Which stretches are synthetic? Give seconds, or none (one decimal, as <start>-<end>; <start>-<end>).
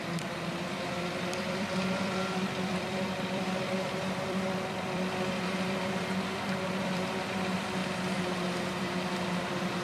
0.0-7.8; 8.8-9.8